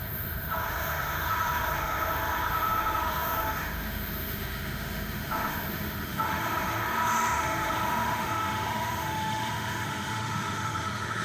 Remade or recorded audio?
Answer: remade